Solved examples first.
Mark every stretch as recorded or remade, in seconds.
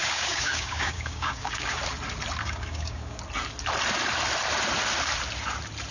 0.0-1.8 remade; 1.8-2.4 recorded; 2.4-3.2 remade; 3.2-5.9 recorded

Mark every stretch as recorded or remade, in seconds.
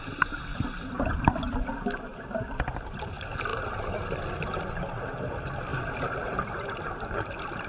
0.0-0.5 recorded; 0.5-3.1 remade; 3.1-5.7 recorded; 5.7-7.7 remade